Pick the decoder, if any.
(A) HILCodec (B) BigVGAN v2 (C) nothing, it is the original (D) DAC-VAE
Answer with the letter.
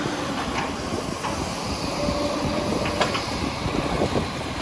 B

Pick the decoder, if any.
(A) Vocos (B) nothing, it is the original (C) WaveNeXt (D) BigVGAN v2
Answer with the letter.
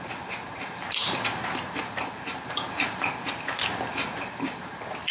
D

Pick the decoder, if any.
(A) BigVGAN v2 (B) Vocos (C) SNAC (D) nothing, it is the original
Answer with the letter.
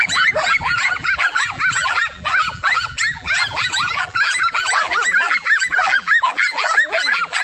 A